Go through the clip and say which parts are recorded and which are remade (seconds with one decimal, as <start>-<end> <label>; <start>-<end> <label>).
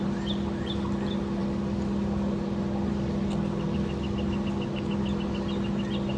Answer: 0.0-6.2 recorded